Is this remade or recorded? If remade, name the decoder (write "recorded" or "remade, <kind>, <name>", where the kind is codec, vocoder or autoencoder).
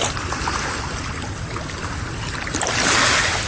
recorded